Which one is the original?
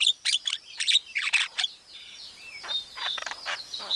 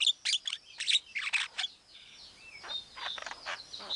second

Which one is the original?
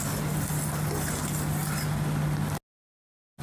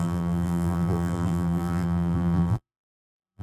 first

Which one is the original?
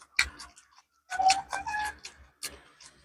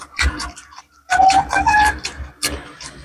first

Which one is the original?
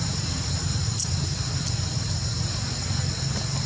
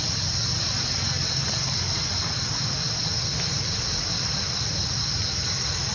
first